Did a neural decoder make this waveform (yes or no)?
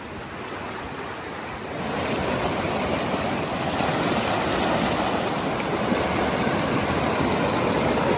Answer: no